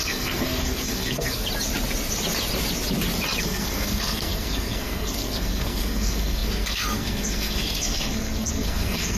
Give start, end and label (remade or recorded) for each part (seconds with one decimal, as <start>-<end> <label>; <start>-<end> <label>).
0.0-1.4 remade; 1.4-3.4 recorded; 3.4-9.2 remade